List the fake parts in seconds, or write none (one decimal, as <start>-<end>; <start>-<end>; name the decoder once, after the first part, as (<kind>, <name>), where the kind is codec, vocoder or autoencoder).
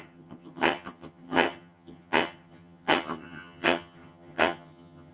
0.0-5.1 (vocoder, HiFi-GAN)